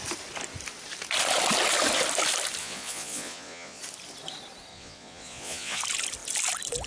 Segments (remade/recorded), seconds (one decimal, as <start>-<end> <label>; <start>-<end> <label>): 0.0-2.6 recorded; 2.6-3.8 remade; 3.8-4.7 recorded; 4.7-5.8 remade; 5.8-6.9 recorded